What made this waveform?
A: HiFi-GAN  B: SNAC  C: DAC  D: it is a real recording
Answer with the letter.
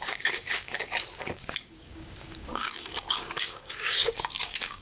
C